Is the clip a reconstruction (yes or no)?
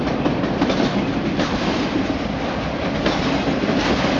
no